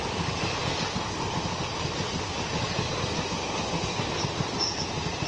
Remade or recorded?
recorded